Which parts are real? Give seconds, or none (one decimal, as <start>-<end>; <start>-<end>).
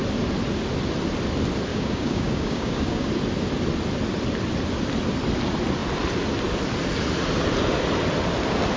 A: 0.0-1.7; 3.1-8.8